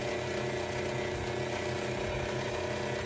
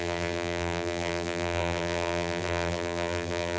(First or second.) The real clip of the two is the first